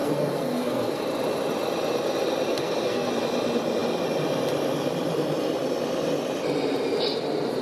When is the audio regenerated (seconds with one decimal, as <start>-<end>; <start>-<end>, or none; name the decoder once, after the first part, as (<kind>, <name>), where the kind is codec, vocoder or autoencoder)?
0.0-1.0 (codec, SNAC); 2.5-3.1